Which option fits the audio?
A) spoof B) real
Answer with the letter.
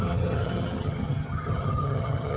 A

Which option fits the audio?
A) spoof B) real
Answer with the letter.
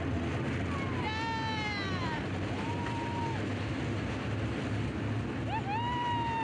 B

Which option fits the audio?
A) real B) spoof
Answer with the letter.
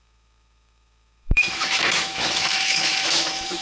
B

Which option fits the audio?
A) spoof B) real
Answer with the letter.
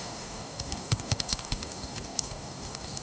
A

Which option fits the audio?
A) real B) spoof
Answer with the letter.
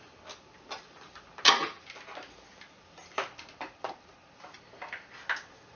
A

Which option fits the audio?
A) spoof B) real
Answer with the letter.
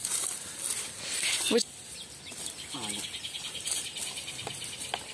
B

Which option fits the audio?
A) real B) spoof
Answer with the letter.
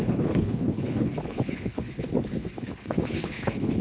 B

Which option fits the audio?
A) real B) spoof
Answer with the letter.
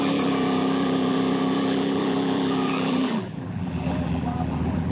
B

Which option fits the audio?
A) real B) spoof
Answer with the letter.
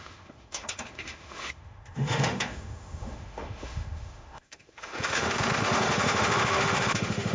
B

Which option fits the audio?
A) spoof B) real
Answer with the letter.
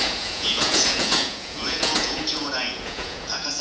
A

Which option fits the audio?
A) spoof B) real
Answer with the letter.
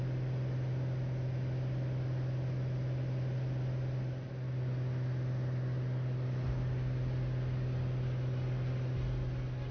B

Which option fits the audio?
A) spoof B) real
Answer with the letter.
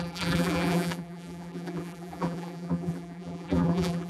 A